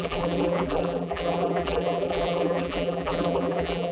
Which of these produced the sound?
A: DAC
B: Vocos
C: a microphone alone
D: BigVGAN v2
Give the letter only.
D